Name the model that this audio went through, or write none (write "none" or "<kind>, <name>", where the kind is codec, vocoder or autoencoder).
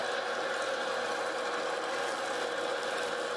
none